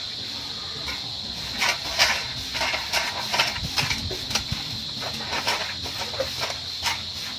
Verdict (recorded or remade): recorded